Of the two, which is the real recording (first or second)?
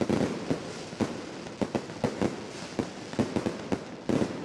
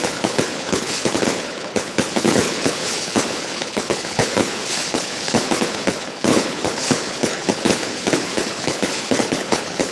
first